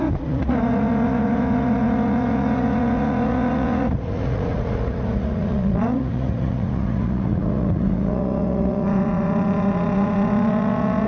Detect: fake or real fake